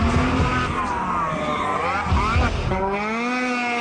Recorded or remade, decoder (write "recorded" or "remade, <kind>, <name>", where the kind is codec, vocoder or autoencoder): recorded